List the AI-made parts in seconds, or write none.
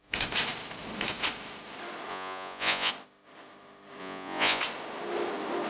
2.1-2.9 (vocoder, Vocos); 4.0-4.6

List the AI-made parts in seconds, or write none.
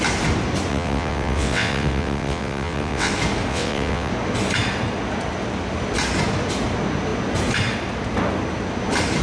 0.7-3.1 (vocoder, WaveNeXt); 3.5-4.1